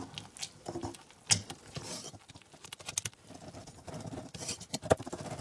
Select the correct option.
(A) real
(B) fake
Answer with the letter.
A